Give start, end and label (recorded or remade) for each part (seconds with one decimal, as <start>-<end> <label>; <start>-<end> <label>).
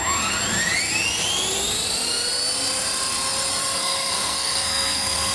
0.0-3.6 recorded; 3.6-5.3 remade